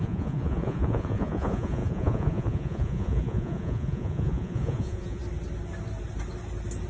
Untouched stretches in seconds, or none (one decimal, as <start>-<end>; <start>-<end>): 5.2-6.9